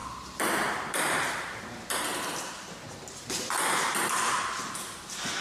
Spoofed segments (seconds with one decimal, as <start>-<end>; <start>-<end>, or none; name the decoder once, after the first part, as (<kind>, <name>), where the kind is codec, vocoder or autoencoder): 0.6-5.4 (vocoder, BigVGAN v2)